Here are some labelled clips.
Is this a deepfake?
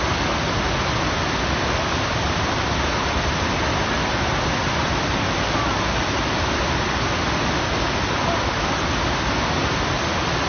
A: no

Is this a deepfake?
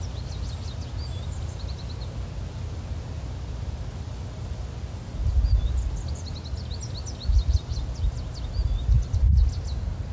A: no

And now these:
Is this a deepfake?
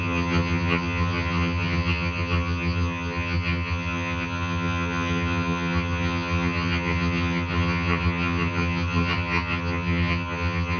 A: yes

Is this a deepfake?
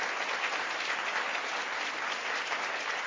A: no